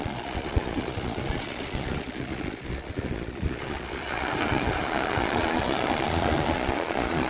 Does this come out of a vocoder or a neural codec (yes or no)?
yes